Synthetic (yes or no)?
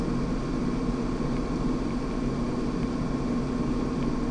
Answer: no